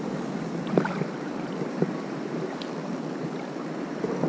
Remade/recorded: recorded